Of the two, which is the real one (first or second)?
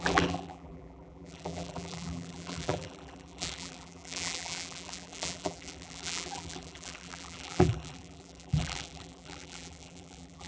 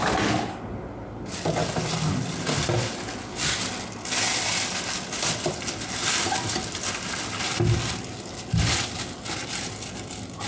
second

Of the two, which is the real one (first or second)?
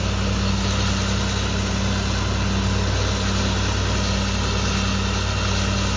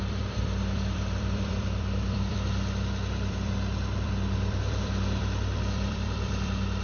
first